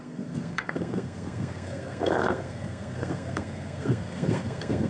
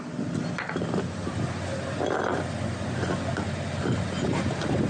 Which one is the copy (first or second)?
first